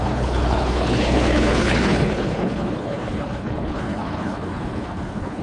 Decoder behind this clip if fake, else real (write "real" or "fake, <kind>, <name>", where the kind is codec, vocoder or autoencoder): fake, codec, HILCodec